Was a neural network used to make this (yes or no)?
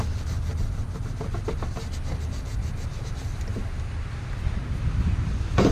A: no